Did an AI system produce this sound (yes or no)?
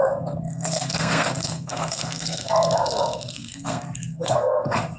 yes